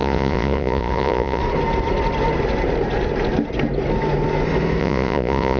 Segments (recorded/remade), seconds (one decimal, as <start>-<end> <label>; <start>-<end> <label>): 0.0-1.4 remade; 1.4-4.8 recorded; 4.8-5.6 remade

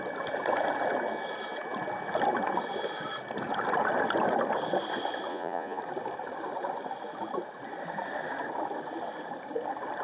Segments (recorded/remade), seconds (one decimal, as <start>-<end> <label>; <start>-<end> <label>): 0.0-5.3 recorded; 5.3-5.8 remade; 5.8-10.0 recorded

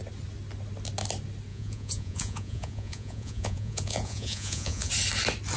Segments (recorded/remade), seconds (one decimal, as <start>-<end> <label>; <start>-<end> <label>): 0.0-1.5 recorded; 1.5-4.9 remade; 4.9-5.6 recorded

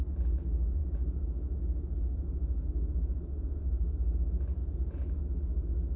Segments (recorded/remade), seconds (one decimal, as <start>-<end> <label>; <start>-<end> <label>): 0.0-4.6 recorded; 4.6-5.1 remade; 5.1-6.0 recorded

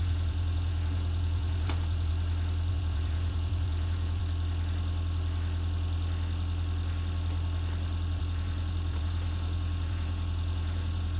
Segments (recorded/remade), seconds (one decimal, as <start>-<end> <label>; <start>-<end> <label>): 0.0-2.1 remade; 2.1-2.7 recorded; 2.7-4.2 remade; 4.2-8.2 recorded; 8.2-11.2 remade

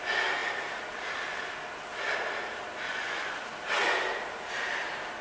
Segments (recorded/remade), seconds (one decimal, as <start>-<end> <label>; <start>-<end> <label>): 0.0-2.9 recorded; 2.9-3.4 remade; 3.4-5.2 recorded

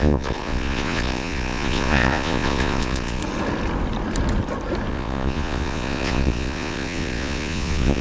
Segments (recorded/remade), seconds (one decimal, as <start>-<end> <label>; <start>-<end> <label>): 0.0-3.2 remade; 3.2-4.9 recorded; 4.9-8.0 remade

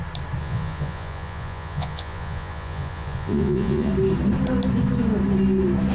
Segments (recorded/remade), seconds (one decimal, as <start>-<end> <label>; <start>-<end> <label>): 0.0-0.4 recorded; 0.4-3.9 remade; 3.9-5.9 recorded